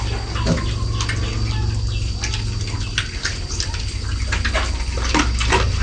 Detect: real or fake real